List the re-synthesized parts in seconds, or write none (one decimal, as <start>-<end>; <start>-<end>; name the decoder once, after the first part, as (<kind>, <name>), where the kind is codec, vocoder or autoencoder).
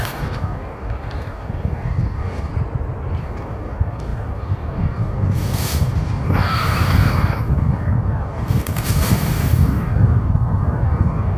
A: 0.0-2.5 (codec, DAC); 3.2-11.4